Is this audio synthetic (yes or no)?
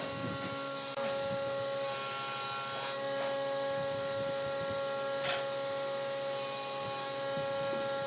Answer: no